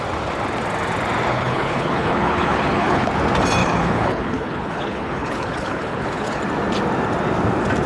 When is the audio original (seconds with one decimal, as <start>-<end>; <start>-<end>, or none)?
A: 0.0-1.3; 3.1-3.6; 6.4-7.9